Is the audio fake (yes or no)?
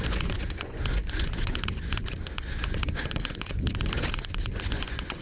yes